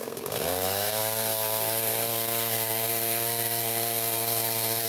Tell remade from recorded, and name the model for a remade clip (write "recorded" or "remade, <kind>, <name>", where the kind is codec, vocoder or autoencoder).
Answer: remade, codec, SNAC